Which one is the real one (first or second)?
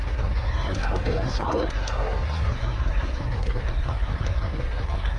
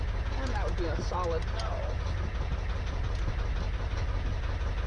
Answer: second